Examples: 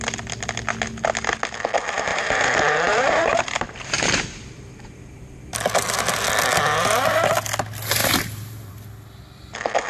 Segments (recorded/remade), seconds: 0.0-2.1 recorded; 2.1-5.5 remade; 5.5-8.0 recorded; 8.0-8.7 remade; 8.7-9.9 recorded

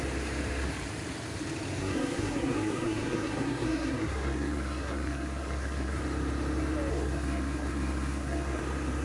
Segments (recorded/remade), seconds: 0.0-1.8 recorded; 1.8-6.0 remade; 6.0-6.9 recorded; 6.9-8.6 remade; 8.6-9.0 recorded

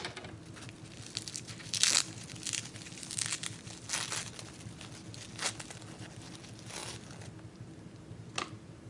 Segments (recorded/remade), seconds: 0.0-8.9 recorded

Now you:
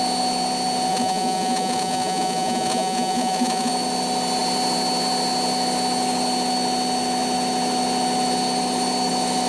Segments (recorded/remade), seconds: 0.0-0.9 recorded; 0.9-3.7 remade; 3.7-9.5 recorded